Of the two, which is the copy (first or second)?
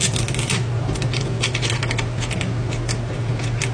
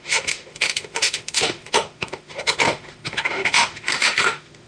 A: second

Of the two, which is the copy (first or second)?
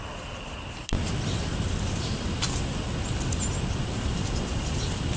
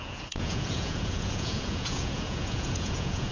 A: second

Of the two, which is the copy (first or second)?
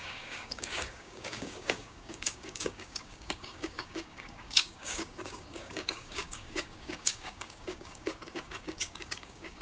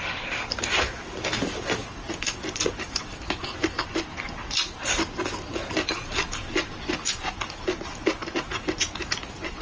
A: first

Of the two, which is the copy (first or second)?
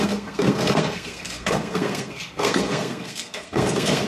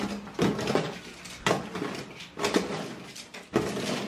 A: first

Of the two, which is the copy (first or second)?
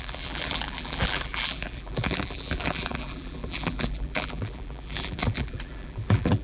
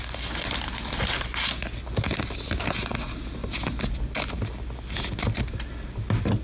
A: first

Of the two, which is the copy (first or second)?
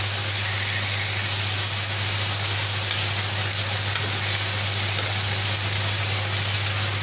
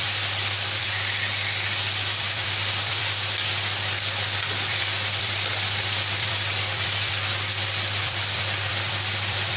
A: second